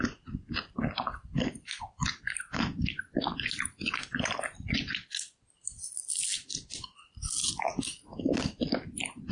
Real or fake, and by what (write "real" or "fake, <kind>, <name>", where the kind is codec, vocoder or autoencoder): real